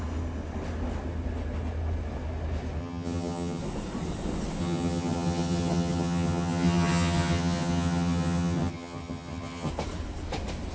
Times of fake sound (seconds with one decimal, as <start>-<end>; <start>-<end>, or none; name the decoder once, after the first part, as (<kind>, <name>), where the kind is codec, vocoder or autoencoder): 2.8-3.6 (vocoder, HiFi-GAN); 4.6-9.7